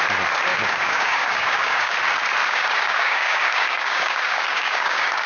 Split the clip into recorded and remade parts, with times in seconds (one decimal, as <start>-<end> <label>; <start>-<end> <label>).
0.0-0.5 recorded; 0.5-1.9 remade; 1.9-2.4 recorded; 2.4-5.3 remade